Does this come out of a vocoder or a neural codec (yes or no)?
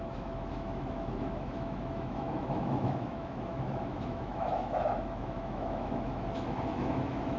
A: yes